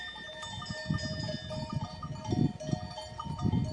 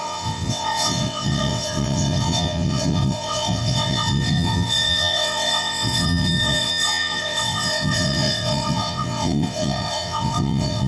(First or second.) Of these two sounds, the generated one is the second